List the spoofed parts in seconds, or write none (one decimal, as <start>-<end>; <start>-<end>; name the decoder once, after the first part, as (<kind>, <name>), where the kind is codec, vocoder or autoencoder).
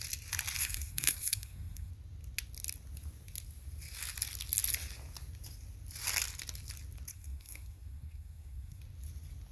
0.6-1.9 (codec, SNAC); 7.1-8.8